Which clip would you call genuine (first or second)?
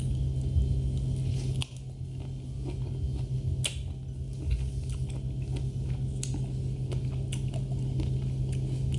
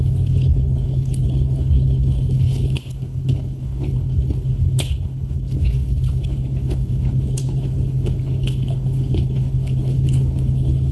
first